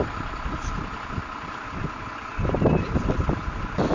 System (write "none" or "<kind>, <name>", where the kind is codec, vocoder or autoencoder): none